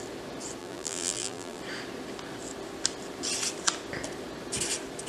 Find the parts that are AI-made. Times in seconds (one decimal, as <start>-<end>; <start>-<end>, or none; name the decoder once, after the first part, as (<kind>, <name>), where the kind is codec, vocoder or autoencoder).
0.6-1.6 (vocoder, BigVGAN v2)